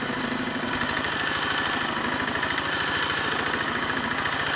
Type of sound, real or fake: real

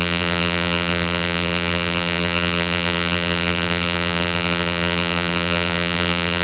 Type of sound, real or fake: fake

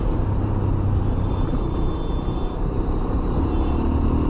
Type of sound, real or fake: real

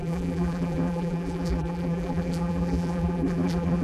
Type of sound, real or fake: fake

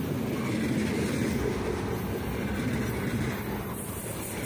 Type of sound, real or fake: real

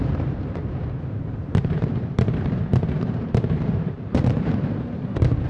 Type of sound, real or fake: fake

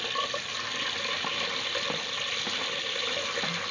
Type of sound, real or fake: real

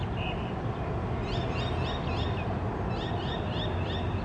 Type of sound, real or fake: real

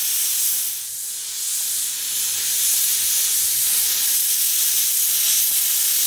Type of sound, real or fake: real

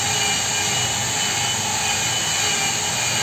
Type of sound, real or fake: real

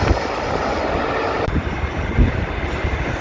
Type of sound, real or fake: real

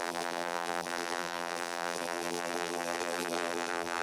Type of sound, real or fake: fake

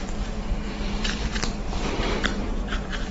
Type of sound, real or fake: fake